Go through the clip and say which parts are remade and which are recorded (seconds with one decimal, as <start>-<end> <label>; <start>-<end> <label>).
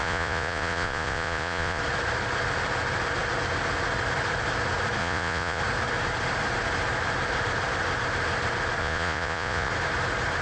0.0-1.8 remade; 1.8-5.0 recorded; 5.0-5.6 remade; 5.6-8.8 recorded; 8.8-9.7 remade; 9.7-10.4 recorded